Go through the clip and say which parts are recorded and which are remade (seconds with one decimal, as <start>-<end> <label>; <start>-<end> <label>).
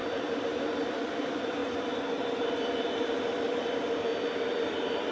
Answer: 0.0-1.2 recorded; 1.2-1.6 remade; 1.6-3.6 recorded; 3.6-4.1 remade; 4.1-5.1 recorded